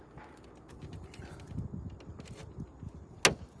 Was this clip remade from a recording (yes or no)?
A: no